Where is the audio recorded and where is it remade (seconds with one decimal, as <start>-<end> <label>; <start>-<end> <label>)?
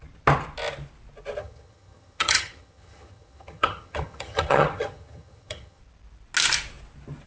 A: 0.0-1.4 recorded; 1.4-5.8 remade; 5.8-7.3 recorded